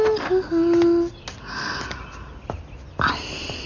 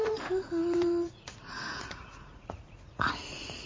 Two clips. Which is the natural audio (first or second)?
first